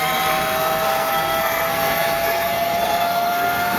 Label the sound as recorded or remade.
remade